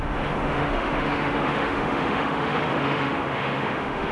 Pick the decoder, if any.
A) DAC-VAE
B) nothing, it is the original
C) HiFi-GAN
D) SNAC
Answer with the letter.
A